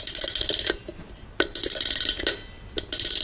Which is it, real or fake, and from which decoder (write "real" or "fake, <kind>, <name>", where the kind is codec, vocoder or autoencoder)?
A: real